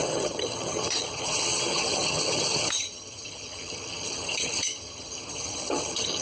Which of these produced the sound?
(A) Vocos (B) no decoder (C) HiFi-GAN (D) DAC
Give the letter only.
C